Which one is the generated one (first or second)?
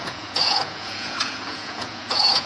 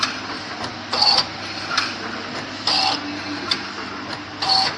first